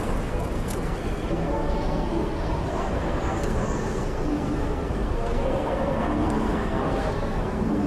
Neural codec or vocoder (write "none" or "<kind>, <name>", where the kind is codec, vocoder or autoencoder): codec, SNAC